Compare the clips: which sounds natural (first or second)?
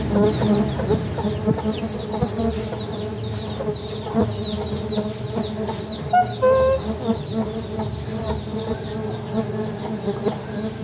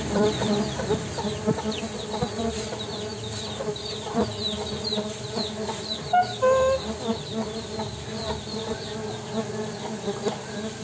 first